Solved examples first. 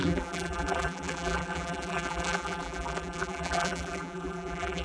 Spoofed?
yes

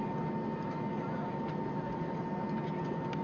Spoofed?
no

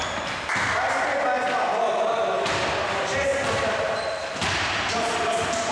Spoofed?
no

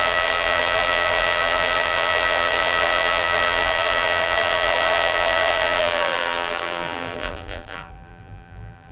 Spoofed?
yes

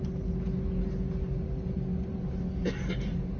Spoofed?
no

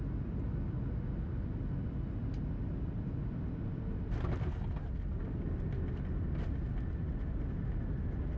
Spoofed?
no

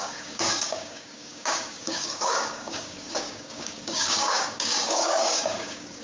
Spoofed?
yes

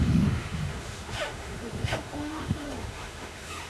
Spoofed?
yes